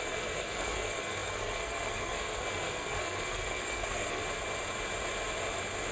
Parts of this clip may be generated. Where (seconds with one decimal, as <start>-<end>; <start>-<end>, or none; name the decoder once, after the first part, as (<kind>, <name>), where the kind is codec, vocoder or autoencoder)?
0.0-4.2 (codec, SNAC)